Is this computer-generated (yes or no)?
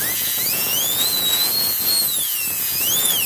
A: yes